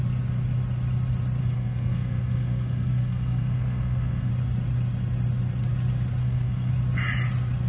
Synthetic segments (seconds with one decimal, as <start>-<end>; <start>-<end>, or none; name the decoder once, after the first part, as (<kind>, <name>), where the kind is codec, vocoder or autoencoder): 1.4-4.3 (codec, SNAC); 6.2-6.7

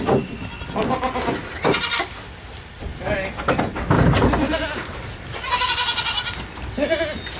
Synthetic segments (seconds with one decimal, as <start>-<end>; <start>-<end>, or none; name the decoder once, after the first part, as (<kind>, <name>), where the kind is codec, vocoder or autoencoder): none

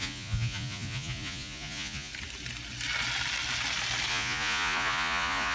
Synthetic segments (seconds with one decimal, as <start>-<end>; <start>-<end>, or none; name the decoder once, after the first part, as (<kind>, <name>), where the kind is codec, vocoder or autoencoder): 0.0-2.1 (vocoder, Vocos); 4.1-5.5

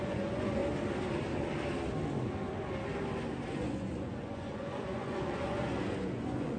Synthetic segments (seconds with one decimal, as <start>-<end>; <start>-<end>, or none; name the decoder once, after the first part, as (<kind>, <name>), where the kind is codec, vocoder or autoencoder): 0.0-0.6 (vocoder, Vocos); 3.5-6.6

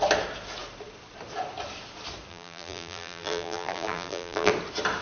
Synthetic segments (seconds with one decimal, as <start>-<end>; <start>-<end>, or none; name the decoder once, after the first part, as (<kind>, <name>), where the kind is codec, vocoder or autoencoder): 2.3-4.5 (vocoder, BigVGAN v2)

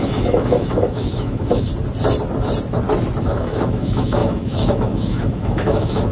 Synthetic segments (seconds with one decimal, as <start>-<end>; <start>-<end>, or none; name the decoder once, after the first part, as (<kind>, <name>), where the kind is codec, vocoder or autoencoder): 0.0-1.7 (autoencoder, DAC-VAE); 3.2-6.1

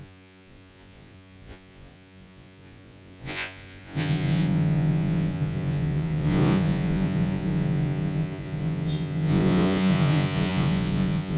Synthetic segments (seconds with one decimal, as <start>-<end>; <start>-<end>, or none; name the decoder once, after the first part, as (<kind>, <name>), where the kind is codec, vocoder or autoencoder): 0.0-11.4 (vocoder, Vocos)

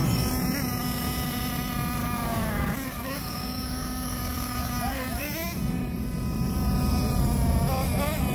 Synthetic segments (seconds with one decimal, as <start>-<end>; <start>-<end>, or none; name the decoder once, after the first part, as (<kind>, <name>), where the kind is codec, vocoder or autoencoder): 2.0-5.2 (codec, DAC)